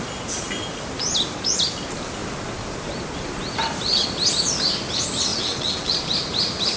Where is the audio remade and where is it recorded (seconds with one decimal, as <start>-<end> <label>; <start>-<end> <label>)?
0.0-5.3 recorded; 5.3-6.0 remade; 6.0-6.8 recorded